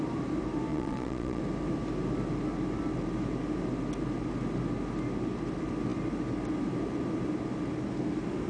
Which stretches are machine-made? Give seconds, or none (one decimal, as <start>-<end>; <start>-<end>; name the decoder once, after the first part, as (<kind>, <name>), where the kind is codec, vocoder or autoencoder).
0.7-1.4 (vocoder, Vocos)